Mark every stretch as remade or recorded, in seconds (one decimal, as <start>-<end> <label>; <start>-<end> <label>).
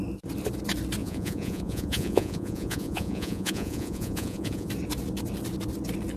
0.0-1.0 recorded; 1.0-4.7 remade; 4.7-6.2 recorded